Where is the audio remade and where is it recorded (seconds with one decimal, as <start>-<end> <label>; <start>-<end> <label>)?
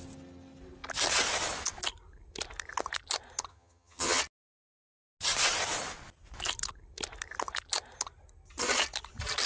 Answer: 0.0-3.5 recorded; 3.5-4.2 remade; 4.2-9.5 recorded